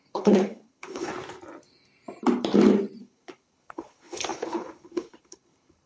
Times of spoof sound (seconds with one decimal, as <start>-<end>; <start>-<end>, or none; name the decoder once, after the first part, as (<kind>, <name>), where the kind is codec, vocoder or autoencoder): 0.0-1.1 (codec, HILCodec); 3.0-5.9